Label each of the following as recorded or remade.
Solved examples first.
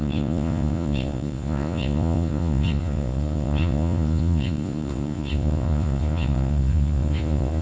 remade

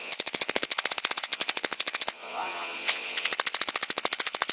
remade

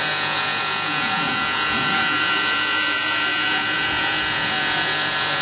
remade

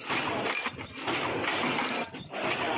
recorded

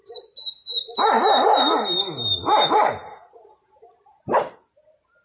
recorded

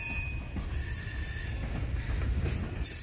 recorded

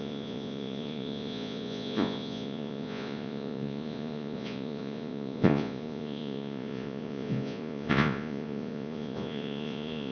remade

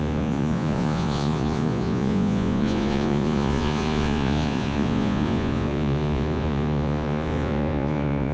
remade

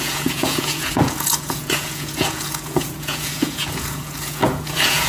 remade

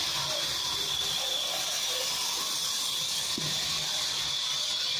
recorded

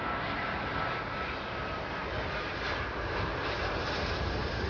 recorded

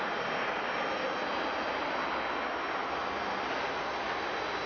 recorded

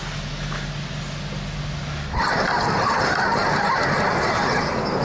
recorded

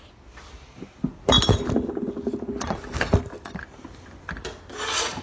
recorded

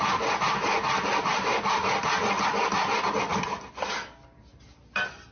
recorded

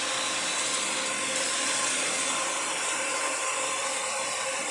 recorded